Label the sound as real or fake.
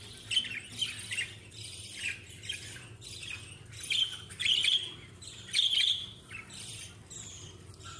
real